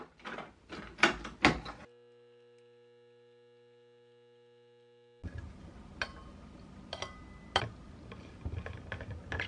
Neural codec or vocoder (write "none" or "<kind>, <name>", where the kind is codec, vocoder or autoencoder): none